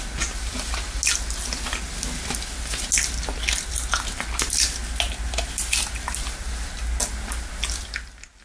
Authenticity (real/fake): real